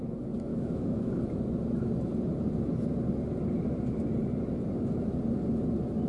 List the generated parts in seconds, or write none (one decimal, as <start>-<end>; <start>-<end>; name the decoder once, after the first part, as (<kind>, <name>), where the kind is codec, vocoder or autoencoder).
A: 0.5-1.2 (autoencoder, DAC-VAE)